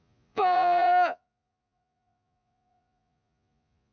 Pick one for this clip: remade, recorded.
remade